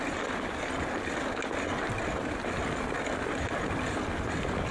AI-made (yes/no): no